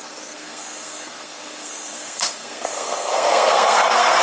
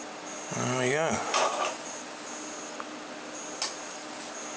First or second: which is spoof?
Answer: first